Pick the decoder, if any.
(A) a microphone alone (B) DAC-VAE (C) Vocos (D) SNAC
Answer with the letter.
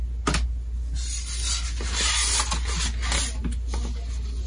A